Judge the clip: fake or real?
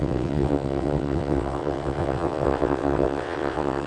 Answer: fake